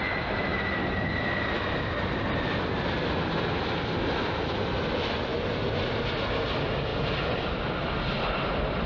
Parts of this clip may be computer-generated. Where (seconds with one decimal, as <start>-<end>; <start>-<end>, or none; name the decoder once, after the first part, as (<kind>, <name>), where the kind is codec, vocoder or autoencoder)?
none